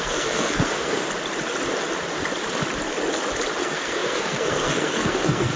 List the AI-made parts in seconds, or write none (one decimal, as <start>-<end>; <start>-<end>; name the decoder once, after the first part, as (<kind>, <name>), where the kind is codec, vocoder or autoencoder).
0.0-1.0 (codec, SNAC); 3.6-5.6